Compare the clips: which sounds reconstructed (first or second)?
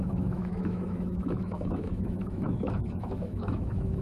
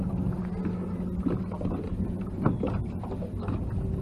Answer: first